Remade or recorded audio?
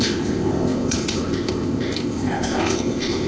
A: remade